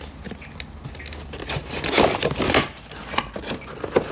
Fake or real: real